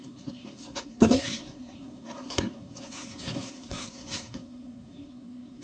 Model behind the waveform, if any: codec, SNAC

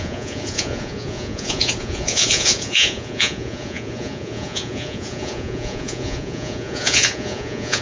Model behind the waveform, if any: vocoder, Vocos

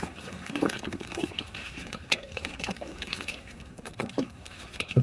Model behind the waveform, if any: codec, SNAC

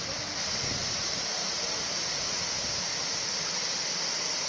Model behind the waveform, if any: none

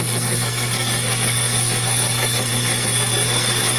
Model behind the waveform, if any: codec, SNAC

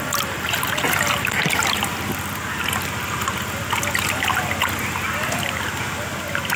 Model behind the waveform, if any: none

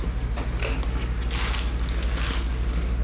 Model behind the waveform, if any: none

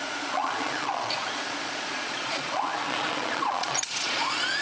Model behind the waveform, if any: vocoder, Vocos